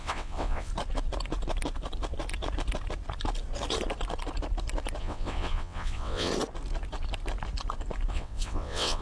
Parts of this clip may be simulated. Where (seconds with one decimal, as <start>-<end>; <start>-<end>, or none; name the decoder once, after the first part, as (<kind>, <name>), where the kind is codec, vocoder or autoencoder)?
0.0-0.7 (vocoder, WaveNeXt); 5.0-6.3; 8.1-9.0